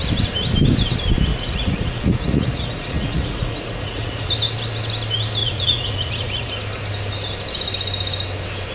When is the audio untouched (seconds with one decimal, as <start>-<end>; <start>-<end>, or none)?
0.0-1.3; 4.3-5.4; 6.5-8.7